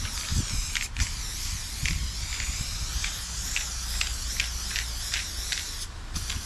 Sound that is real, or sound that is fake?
real